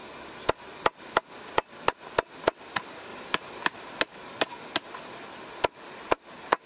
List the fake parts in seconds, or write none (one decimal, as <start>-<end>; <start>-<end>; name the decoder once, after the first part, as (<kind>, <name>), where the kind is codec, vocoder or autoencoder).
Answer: 3.1-4.0 (vocoder, BigVGAN v2)

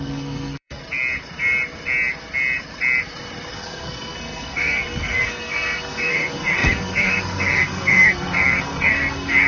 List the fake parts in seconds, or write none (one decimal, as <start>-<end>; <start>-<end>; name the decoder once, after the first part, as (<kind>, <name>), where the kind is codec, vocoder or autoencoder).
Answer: 0.0-0.8 (codec, SNAC); 3.5-9.5

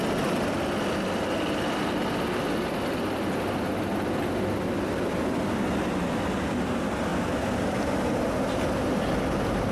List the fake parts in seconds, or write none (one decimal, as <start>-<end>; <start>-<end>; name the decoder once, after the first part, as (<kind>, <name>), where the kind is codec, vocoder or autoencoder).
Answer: none

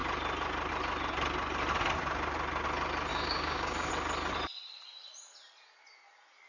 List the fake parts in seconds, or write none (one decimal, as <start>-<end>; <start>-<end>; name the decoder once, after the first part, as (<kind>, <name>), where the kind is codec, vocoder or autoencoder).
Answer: 3.1-3.9 (codec, DAC)

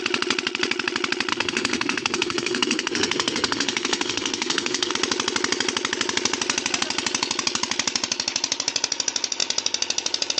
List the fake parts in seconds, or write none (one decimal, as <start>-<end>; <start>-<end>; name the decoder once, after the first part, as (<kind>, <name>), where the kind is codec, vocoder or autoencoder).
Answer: 1.3-4.9 (codec, SNAC)